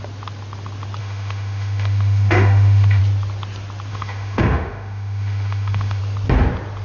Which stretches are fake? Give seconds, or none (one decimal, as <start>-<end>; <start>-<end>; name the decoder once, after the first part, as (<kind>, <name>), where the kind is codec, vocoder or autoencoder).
1.0-3.0 (autoencoder, DAC-VAE); 3.9-6.0